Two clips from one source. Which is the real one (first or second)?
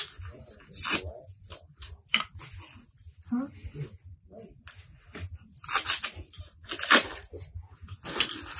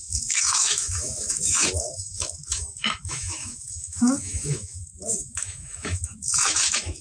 first